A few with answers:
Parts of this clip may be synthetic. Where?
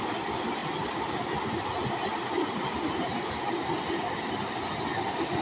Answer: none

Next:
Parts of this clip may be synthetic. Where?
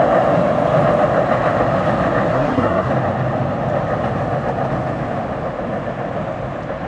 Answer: 2.3-2.9 (codec, SNAC)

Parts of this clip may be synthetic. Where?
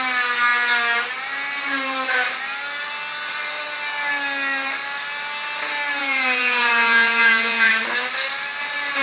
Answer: 6.0-7.7 (vocoder, Vocos)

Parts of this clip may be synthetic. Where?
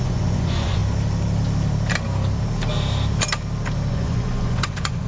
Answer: 0.0-0.8 (vocoder, Vocos); 3.9-5.1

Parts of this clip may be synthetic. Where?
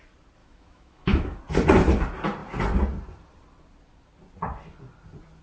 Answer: 0.4-1.4 (autoencoder, DAC-VAE)